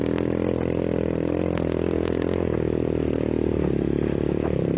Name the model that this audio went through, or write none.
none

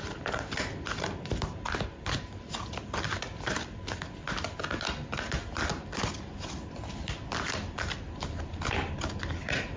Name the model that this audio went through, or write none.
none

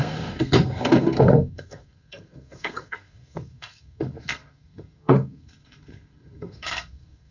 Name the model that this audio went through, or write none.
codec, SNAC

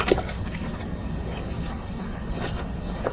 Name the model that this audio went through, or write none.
codec, DAC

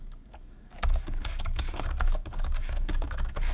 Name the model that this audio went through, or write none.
codec, DAC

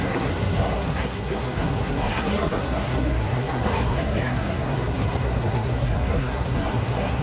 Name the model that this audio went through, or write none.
codec, SNAC